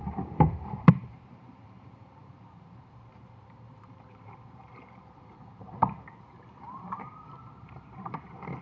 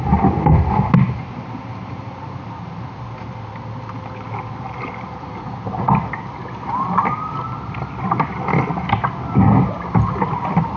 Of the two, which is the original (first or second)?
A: second